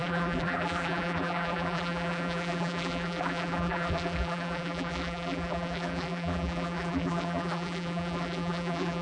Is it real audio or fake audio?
fake